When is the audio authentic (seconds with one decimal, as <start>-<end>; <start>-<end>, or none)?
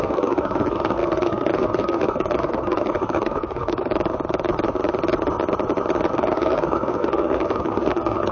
3.9-6.1